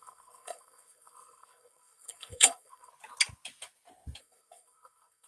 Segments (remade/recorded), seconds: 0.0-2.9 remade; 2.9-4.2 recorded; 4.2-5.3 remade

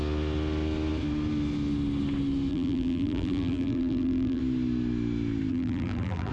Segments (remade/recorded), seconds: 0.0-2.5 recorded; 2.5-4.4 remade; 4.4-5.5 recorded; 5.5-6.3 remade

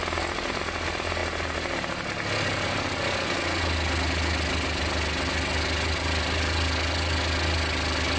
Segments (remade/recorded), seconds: 0.0-8.2 recorded

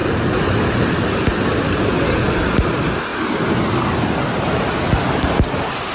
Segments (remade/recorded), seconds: 0.0-3.1 recorded; 3.1-4.0 remade; 4.0-5.9 recorded